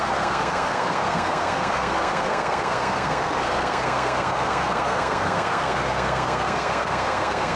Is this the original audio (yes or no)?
no